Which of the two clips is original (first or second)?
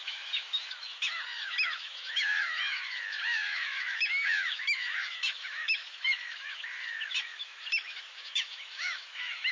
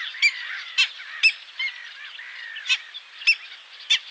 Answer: second